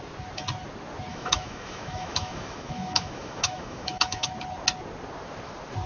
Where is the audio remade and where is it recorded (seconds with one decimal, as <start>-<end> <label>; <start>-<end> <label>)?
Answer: 0.0-1.1 recorded; 1.1-4.3 remade; 4.3-5.9 recorded